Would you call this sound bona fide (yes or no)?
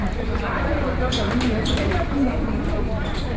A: yes